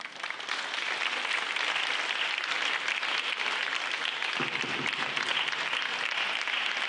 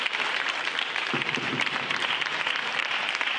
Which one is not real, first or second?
second